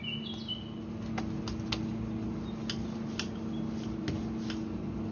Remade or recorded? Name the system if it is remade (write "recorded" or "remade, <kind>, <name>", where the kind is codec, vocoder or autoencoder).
recorded